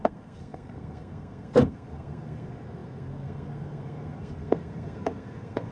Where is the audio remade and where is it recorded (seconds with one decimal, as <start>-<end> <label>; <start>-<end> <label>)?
0.0-5.7 remade